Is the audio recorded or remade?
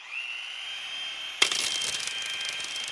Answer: recorded